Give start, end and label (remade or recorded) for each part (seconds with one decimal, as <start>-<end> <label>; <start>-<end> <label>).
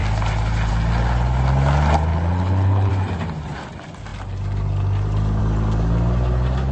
0.0-2.1 recorded; 2.1-2.9 remade; 2.9-6.7 recorded